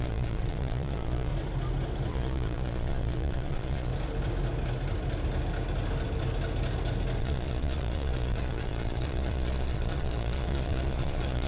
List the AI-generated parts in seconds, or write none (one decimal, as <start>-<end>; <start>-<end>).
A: 0.0-1.3; 2.1-3.9; 7.2-11.5